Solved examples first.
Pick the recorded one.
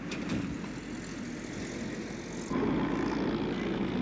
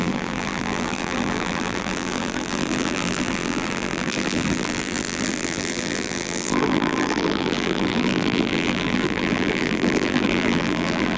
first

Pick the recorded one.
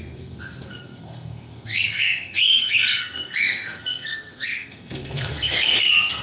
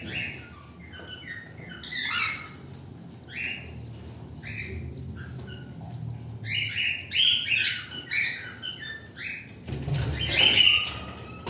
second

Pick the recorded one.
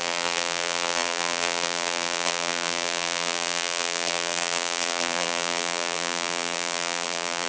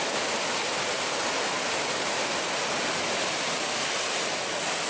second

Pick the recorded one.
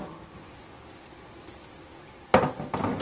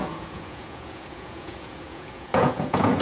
first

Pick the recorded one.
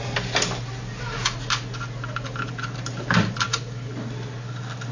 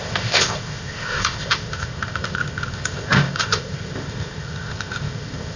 first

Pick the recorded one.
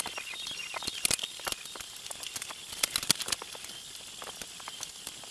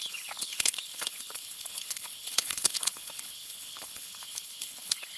first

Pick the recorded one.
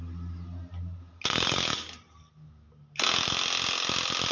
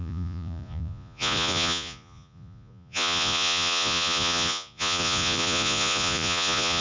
first